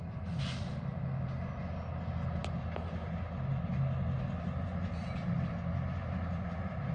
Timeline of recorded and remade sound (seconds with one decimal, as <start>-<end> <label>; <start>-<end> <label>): 0.0-6.9 recorded